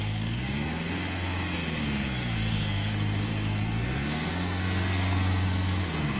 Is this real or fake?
fake